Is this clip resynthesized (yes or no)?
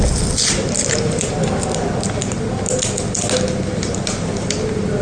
no